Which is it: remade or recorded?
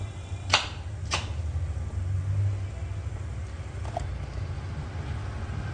recorded